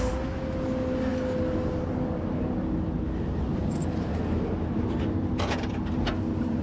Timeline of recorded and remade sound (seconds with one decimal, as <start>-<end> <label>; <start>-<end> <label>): 0.0-6.6 recorded

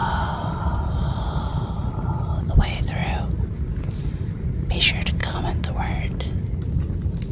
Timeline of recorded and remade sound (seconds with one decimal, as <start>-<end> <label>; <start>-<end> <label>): 0.0-7.3 recorded

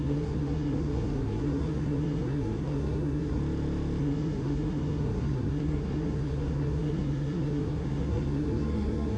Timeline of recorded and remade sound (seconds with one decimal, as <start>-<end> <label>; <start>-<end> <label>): 0.0-3.4 remade; 3.4-4.0 recorded; 4.0-9.2 remade

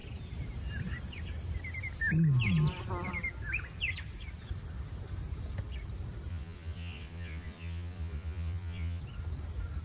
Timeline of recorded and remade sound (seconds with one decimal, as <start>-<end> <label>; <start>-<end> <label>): 0.0-6.3 recorded; 6.3-9.0 remade; 9.0-9.8 recorded